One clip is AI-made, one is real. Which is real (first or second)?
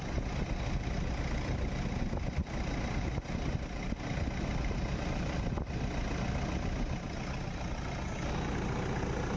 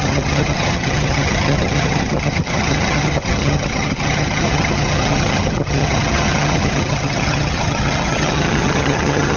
first